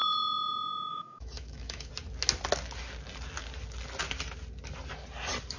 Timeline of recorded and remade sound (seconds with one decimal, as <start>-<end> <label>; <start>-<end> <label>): 0.0-0.9 recorded; 0.9-1.9 remade; 1.9-5.6 recorded